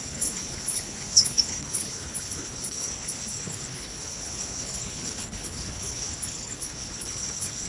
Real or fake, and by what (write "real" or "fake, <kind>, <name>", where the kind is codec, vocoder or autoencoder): fake, codec, HILCodec